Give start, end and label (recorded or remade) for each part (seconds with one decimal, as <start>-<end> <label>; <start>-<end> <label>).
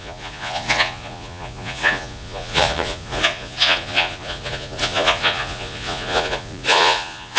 0.0-7.4 remade